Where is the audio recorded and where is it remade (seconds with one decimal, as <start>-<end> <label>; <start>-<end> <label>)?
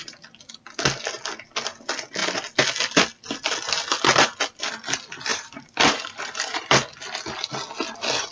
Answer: 0.0-5.3 recorded; 5.3-6.7 remade; 6.7-8.3 recorded